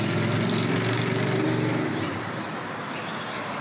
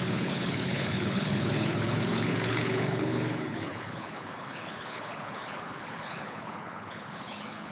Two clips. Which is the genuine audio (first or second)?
first